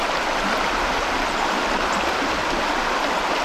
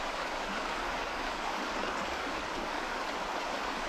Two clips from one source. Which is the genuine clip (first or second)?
first